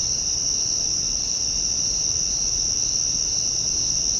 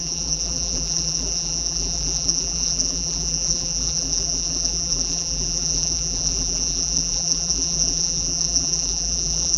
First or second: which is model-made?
second